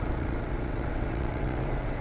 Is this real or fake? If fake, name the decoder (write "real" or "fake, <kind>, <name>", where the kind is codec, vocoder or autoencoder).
fake, vocoder, WaveNeXt